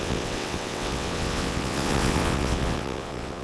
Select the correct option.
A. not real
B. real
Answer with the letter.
A